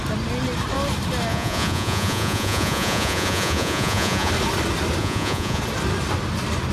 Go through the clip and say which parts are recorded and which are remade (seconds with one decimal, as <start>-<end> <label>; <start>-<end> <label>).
0.0-1.3 recorded; 1.3-4.3 remade; 4.3-5.0 recorded; 5.0-5.6 remade; 5.6-6.7 recorded